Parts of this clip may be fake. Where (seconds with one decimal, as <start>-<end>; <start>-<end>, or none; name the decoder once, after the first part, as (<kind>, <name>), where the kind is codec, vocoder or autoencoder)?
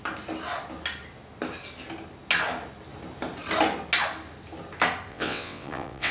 5.1-6.1 (vocoder, WaveNeXt)